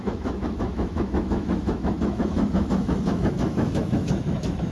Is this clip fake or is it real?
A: fake